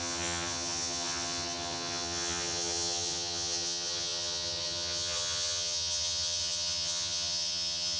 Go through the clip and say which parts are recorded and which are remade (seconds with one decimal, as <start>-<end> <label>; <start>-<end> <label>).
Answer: 0.0-8.0 remade